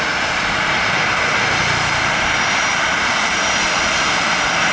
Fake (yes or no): no